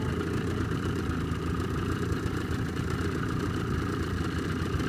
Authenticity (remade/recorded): recorded